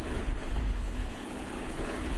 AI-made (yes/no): yes